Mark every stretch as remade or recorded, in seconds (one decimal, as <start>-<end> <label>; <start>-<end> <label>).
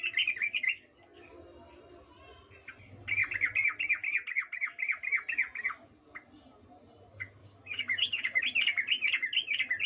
0.0-7.4 recorded; 7.4-8.4 remade; 8.4-9.9 recorded